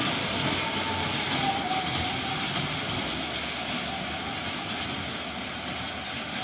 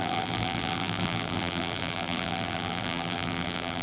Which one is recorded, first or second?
first